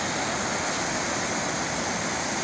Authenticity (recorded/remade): recorded